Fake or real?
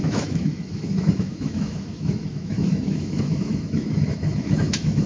fake